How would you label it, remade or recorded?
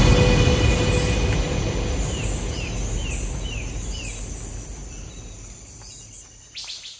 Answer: recorded